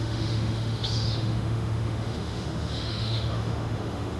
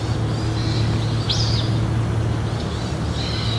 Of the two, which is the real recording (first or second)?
second